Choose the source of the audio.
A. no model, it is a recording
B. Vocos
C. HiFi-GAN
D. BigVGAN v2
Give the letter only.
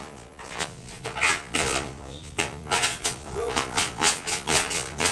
B